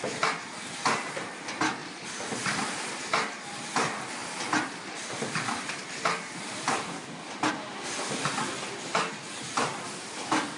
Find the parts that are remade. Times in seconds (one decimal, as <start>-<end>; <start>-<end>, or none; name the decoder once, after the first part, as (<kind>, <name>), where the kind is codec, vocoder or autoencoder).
1.8-3.0 (vocoder, BigVGAN v2); 4.2-7.5